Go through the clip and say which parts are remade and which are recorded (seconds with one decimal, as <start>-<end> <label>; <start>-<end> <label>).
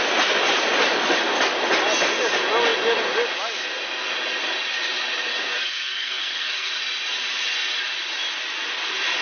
0.0-5.3 recorded; 5.3-6.7 remade; 6.7-9.2 recorded